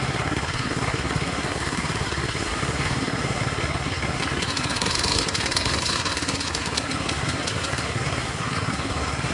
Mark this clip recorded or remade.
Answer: remade